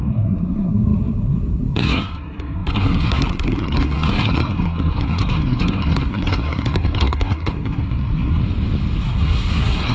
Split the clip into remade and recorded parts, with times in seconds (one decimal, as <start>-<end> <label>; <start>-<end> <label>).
0.0-8.4 remade; 8.4-9.0 recorded; 9.0-9.9 remade